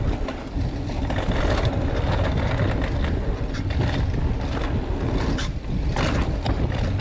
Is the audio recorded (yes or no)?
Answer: yes